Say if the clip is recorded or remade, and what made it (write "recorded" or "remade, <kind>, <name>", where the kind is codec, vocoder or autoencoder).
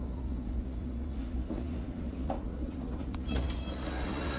remade, vocoder, Vocos